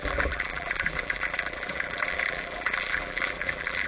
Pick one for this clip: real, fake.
fake